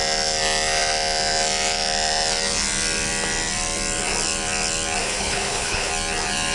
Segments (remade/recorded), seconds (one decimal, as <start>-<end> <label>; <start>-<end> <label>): 0.0-5.0 recorded; 5.0-5.9 remade; 5.9-6.5 recorded

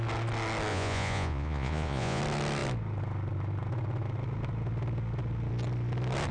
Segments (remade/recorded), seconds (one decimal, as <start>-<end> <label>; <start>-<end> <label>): 0.0-0.7 recorded; 0.7-2.2 remade; 2.2-6.3 recorded